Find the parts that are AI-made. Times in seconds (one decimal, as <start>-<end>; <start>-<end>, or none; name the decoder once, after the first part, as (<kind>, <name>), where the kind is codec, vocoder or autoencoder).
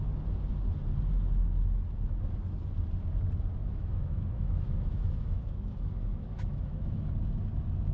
3.6-7.1 (autoencoder, DAC-VAE)